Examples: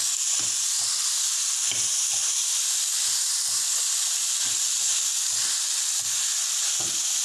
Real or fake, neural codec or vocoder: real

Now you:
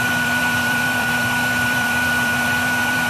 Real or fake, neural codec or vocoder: fake, vocoder, BigVGAN v2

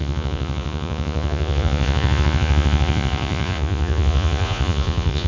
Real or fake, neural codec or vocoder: fake, vocoder, Vocos